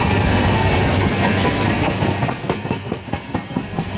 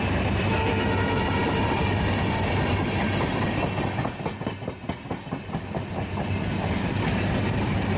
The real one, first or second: second